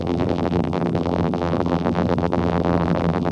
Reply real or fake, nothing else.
fake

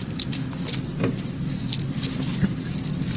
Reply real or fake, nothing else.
real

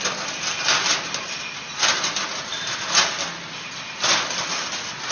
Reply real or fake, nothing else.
real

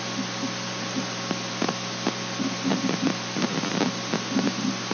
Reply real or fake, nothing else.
real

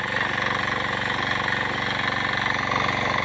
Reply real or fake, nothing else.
real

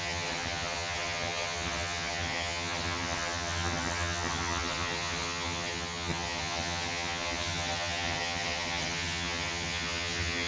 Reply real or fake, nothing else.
fake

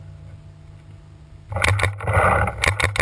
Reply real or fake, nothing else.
real